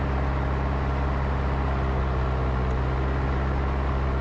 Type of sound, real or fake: real